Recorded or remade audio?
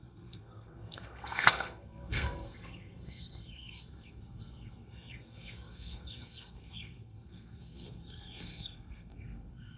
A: remade